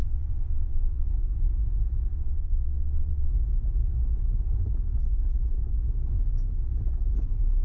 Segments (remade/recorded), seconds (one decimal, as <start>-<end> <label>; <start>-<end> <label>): 0.0-1.1 remade; 1.1-2.1 recorded; 2.1-3.3 remade; 3.3-7.6 recorded